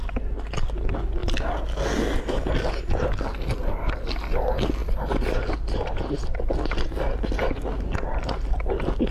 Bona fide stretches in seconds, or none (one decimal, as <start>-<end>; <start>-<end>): 0.0-9.1